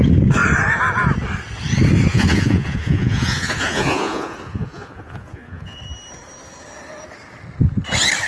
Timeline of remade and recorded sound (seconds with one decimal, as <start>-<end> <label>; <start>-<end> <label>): 0.0-2.1 recorded; 2.1-5.8 remade; 5.8-8.3 recorded